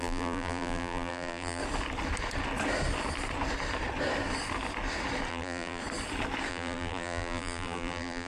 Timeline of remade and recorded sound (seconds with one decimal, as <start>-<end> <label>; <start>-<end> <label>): 0.0-1.6 remade; 1.6-5.3 recorded; 5.3-5.8 remade; 5.8-6.5 recorded; 6.5-8.3 remade